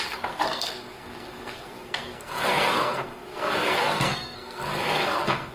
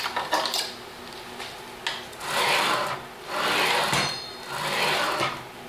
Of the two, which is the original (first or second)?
second